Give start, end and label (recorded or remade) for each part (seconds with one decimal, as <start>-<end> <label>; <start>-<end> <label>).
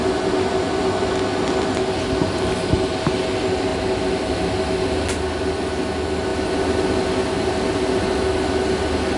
0.0-9.2 recorded